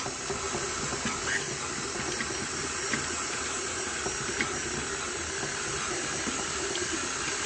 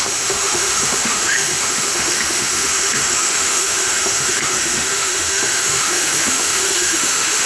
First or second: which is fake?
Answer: second